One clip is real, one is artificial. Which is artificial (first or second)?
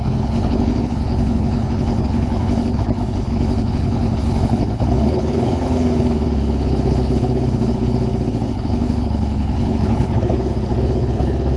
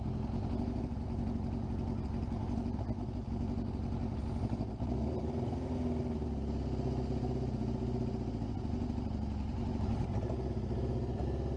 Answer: first